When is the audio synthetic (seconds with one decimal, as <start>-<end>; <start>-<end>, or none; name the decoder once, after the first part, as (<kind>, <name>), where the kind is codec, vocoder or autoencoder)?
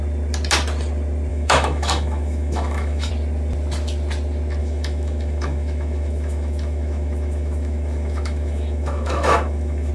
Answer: 1.3-3.1 (autoencoder, DAC-VAE); 4.6-9.9